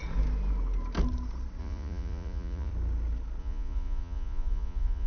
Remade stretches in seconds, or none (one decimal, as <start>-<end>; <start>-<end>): 1.6-2.7; 3.4-5.1